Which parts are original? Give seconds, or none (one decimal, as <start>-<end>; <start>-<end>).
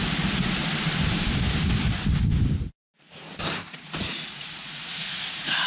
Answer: 0.6-4.0